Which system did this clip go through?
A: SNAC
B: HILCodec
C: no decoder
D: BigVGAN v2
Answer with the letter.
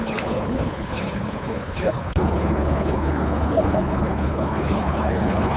B